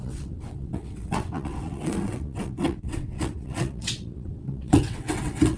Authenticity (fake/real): fake